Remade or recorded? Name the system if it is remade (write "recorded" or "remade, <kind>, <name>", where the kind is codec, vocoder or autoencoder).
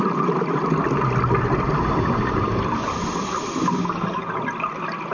recorded